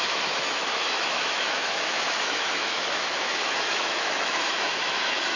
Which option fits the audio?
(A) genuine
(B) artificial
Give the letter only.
B